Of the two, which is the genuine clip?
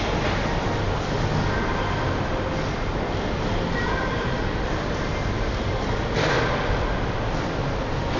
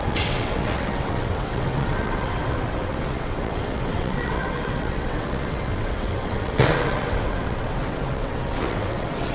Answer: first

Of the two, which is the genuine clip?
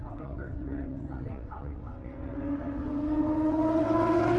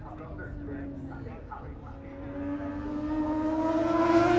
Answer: second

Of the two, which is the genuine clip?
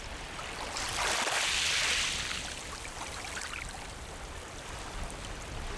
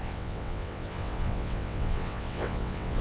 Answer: first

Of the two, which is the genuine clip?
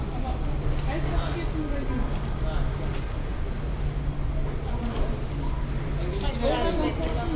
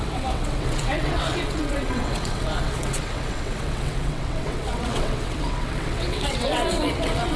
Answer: first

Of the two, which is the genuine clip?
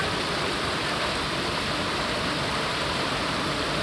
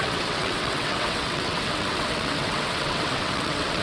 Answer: first